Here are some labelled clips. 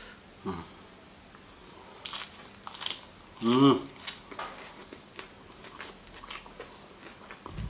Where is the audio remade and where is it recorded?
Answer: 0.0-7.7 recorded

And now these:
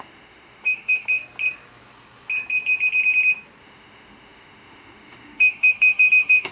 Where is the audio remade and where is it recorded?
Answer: 0.0-1.2 remade; 1.2-3.6 recorded; 3.6-6.5 remade

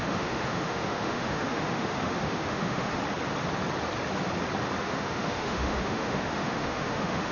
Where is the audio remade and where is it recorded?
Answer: 0.0-3.0 remade; 3.0-4.8 recorded; 4.8-7.3 remade

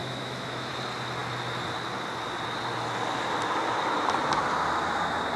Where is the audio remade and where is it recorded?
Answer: 0.0-0.7 remade; 0.7-5.4 recorded

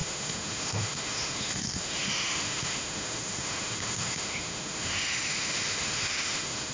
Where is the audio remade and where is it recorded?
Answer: 0.0-6.7 remade

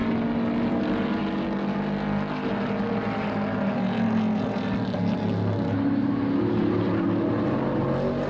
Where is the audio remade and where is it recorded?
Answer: 0.0-8.3 recorded